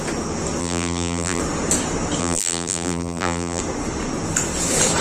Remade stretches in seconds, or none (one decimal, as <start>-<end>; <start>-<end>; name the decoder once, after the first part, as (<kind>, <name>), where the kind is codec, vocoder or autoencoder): 0.6-1.4 (vocoder, BigVGAN v2); 2.2-3.6